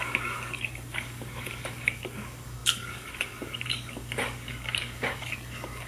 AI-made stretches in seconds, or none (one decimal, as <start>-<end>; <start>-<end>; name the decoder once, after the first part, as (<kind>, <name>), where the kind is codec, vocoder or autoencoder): 0.0-5.9 (codec, DAC)